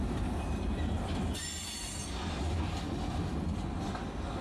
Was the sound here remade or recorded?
recorded